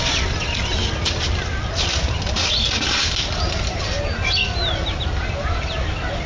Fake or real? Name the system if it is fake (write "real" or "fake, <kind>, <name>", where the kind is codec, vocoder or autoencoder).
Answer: real